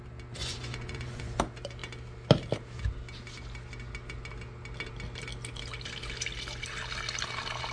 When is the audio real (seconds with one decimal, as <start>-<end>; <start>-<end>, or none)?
0.0-0.4; 1.4-7.7